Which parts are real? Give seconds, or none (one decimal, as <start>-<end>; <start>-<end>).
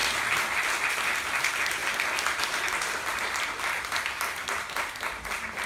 0.0-1.8; 4.9-5.7